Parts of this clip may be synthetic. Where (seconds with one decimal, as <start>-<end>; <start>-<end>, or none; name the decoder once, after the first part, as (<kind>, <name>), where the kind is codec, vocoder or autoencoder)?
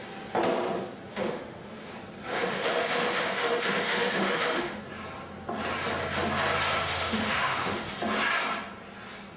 1.1-1.9 (autoencoder, DAC-VAE); 2.3-4.8; 6.8-7.9